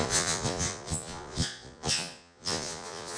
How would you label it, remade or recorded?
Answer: remade